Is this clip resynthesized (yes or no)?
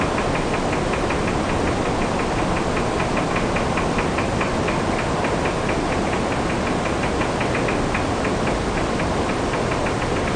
no